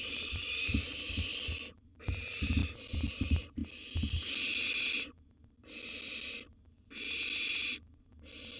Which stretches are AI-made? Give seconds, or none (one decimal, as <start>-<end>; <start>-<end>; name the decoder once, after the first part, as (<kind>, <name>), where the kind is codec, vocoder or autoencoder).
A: 0.0-1.3 (vocoder, BigVGAN v2); 1.9-2.6; 3.1-3.6